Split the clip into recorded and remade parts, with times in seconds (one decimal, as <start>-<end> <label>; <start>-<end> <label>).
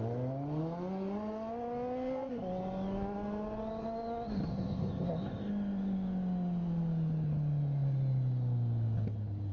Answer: 0.0-4.5 recorded; 4.5-5.5 remade; 5.5-9.5 recorded